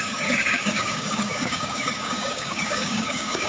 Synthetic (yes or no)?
yes